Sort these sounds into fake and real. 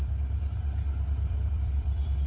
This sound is fake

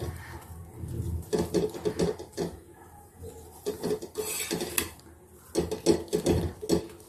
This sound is real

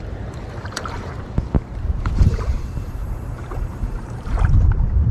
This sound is fake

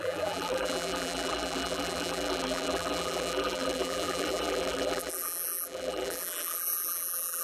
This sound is fake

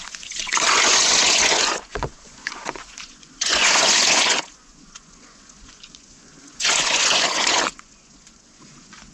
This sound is fake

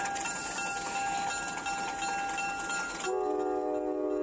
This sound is real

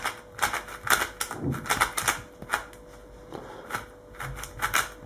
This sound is real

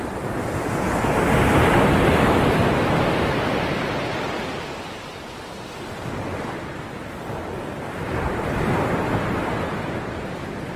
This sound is real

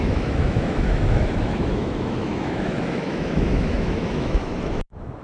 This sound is fake